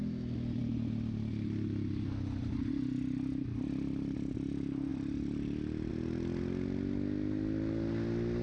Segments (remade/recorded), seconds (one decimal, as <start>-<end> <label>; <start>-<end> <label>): 0.0-4.9 recorded; 4.9-5.9 remade; 5.9-8.4 recorded